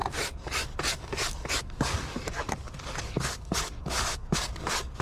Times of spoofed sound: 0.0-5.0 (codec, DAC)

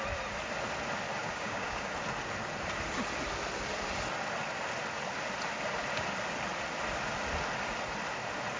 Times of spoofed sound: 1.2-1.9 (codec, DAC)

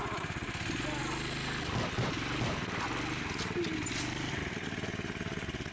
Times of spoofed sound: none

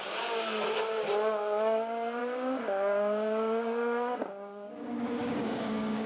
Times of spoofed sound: 2.2-6.1 (codec, DAC)

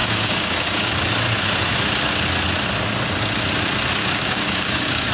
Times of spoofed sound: 0.0-0.9 (codec, DAC); 4.0-5.1

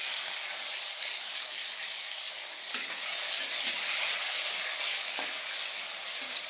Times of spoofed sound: 0.0-6.5 (codec, DAC)